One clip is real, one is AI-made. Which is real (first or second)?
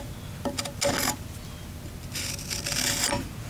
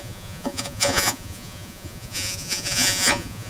first